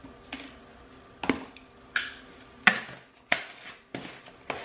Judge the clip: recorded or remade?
recorded